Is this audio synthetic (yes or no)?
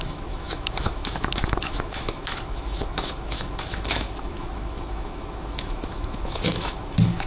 yes